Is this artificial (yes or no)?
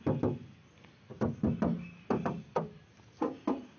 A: no